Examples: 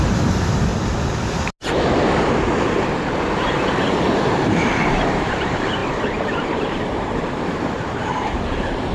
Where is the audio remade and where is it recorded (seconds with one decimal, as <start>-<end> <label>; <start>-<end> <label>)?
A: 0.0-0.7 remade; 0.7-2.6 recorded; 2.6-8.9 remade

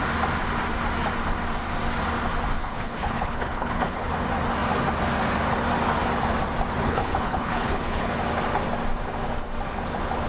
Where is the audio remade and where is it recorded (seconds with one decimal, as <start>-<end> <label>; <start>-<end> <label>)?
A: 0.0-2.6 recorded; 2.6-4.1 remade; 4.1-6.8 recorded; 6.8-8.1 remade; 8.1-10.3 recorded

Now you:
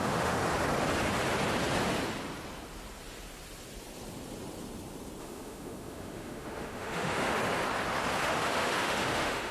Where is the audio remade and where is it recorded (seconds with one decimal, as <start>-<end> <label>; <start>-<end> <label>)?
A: 0.0-0.4 remade; 0.4-5.2 recorded; 5.2-7.4 remade; 7.4-8.2 recorded; 8.2-9.5 remade

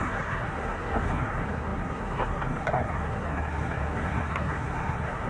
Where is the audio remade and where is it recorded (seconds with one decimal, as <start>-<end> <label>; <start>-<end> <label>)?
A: 0.0-5.3 remade

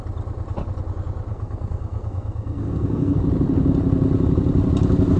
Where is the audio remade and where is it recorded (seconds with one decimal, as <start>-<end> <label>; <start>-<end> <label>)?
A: 0.0-1.3 recorded; 1.3-3.2 remade; 3.2-5.2 recorded

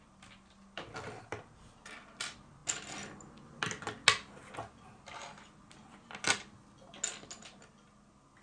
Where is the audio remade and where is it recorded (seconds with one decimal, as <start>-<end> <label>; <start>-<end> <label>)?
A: 0.0-8.4 recorded

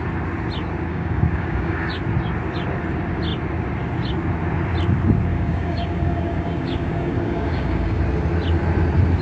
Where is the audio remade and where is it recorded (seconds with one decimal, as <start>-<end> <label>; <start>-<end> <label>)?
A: 0.0-0.9 recorded; 0.9-2.0 remade; 2.0-5.3 recorded; 5.3-8.0 remade; 8.0-9.2 recorded